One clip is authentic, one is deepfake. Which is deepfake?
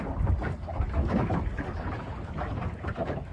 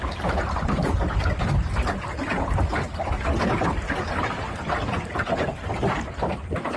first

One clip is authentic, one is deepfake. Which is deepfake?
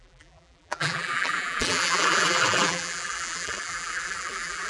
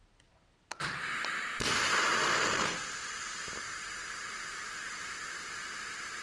first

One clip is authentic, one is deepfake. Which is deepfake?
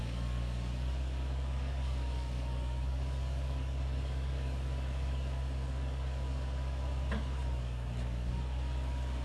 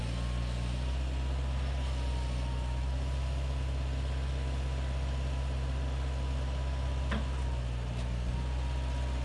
first